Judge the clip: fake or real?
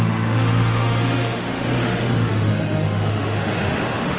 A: fake